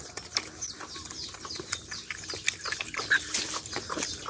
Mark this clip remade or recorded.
recorded